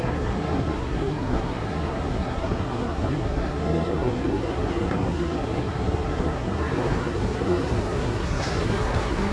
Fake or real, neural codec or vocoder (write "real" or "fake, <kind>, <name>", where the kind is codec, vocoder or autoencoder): fake, codec, SNAC